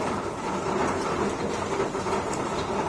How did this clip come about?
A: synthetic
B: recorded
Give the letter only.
B